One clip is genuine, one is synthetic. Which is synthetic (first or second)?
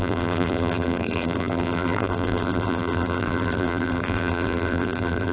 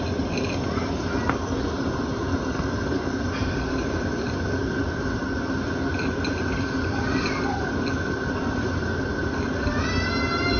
first